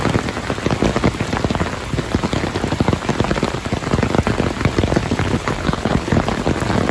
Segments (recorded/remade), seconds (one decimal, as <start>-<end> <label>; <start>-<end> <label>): 0.0-5.0 recorded; 5.0-6.2 remade; 6.2-6.9 recorded